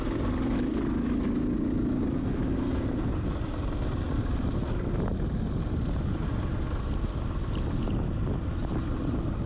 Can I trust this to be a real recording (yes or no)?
yes